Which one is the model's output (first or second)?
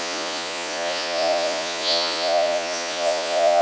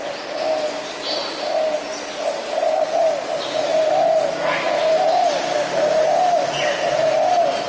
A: first